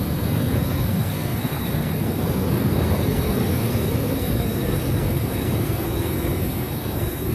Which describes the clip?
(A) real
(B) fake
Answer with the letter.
B